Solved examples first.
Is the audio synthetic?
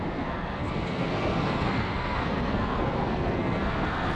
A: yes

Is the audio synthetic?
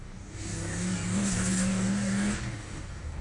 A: yes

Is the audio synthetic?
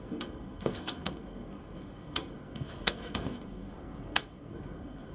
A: yes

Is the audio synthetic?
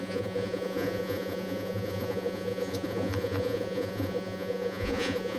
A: yes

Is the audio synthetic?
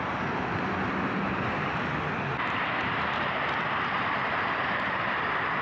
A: no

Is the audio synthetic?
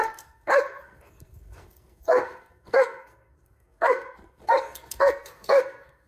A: yes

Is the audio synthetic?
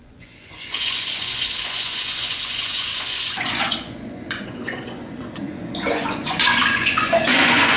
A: yes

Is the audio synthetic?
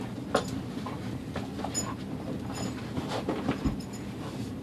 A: no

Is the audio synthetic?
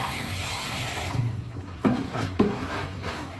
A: yes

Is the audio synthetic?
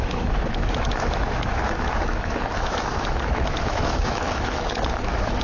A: yes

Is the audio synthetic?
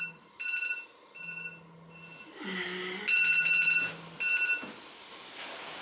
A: no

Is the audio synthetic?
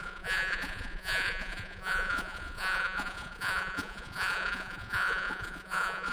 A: yes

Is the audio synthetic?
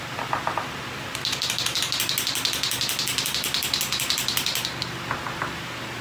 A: no